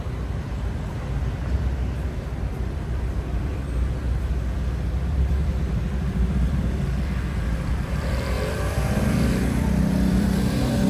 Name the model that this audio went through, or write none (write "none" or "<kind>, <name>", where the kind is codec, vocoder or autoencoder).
vocoder, BigVGAN v2